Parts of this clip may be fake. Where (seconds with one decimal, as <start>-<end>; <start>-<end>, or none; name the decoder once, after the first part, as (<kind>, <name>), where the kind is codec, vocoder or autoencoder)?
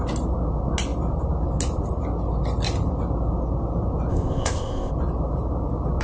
4.1-4.9 (codec, ZipCodec)